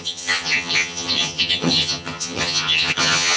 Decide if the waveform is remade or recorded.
remade